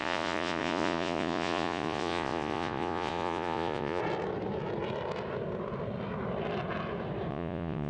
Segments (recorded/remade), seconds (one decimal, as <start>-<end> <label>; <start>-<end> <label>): 0.0-4.0 remade; 4.0-7.3 recorded; 7.3-7.9 remade